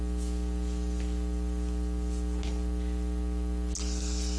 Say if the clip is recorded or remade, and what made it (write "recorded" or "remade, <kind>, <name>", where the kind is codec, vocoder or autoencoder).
recorded